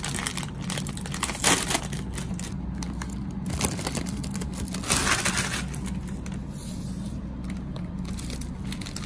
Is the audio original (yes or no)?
yes